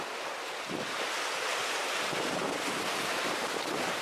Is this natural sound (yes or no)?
yes